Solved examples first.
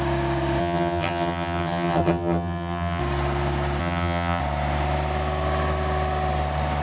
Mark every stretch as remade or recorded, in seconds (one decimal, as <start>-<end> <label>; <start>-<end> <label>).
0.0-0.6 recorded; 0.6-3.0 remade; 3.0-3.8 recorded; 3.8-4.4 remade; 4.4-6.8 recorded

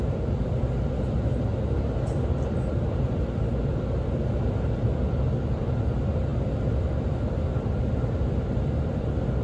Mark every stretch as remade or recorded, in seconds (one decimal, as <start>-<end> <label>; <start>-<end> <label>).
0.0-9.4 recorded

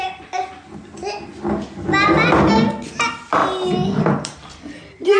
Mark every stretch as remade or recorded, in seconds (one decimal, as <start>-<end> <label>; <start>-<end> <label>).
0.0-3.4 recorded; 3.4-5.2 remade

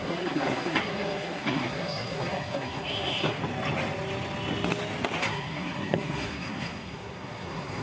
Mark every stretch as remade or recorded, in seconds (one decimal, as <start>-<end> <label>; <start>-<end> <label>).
0.0-3.4 remade; 3.4-5.2 recorded; 5.2-7.8 remade